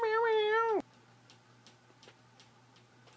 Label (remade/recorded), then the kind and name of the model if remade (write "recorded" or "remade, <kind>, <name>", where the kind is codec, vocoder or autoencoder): recorded